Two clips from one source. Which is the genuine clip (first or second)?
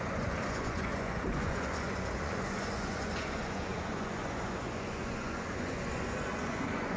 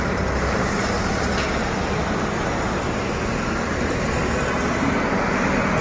second